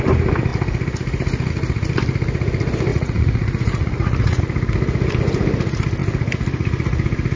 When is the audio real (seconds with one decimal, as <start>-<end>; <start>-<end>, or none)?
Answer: 0.0-2.9; 4.4-7.4